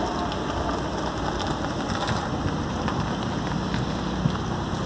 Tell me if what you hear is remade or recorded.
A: recorded